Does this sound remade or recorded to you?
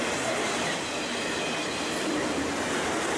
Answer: recorded